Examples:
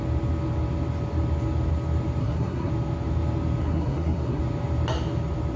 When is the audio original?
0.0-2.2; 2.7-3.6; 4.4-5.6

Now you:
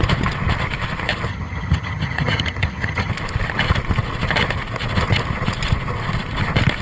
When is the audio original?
0.0-1.3; 3.1-6.8

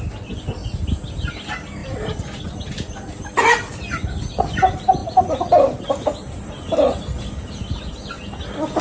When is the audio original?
0.0-1.8; 2.4-8.8

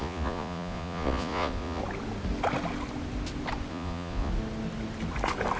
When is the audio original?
1.8-3.7; 4.3-5.6

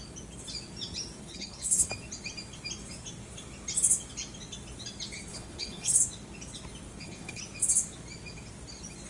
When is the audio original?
0.0-1.2; 1.9-5.3; 6.0-6.9; 7.4-9.1